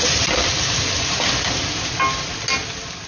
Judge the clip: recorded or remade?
recorded